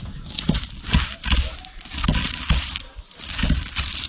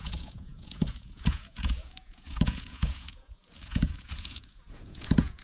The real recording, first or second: first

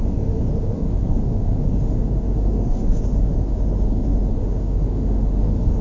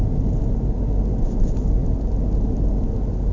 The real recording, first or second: second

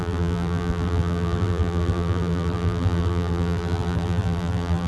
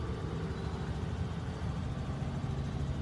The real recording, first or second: second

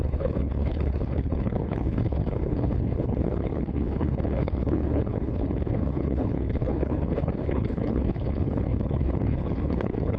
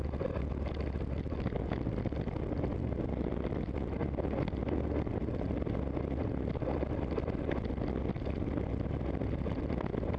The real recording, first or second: second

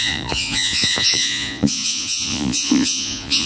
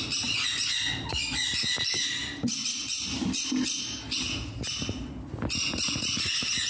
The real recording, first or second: second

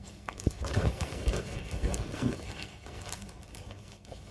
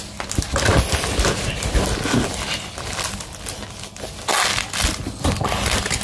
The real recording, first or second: second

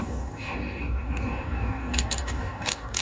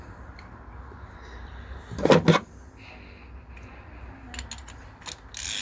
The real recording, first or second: second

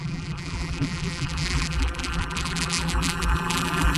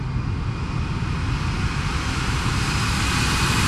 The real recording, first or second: second